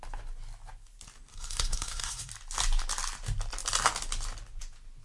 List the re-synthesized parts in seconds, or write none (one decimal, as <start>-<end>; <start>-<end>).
1.3-2.3

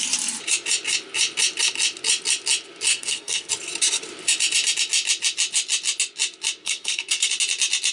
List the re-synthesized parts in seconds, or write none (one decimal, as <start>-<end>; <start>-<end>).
2.9-3.5; 6.6-7.3

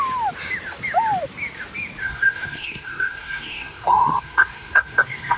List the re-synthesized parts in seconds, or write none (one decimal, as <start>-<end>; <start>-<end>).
2.0-5.4

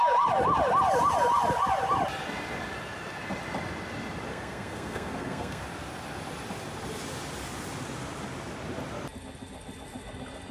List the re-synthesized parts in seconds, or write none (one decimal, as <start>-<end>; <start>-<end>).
4.3-5.6

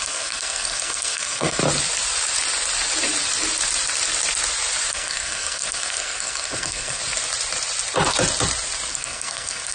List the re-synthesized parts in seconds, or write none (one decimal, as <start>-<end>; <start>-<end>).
0.0-1.6; 4.9-7.0; 8.9-9.7

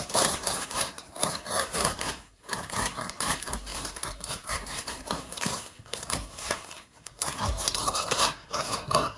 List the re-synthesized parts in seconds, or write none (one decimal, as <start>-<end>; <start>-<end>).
0.0-9.2

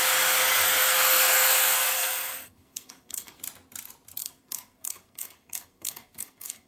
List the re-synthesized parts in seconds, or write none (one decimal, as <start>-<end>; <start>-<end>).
0.4-3.4; 4.2-6.7

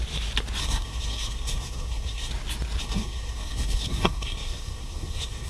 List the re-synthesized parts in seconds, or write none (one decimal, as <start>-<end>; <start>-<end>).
0.6-2.3; 2.8-5.5